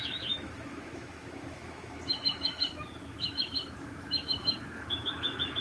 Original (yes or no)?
no